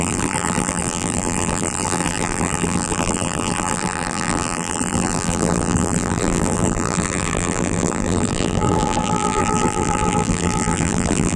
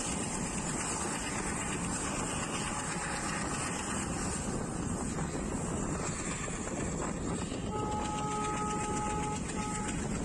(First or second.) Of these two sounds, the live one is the second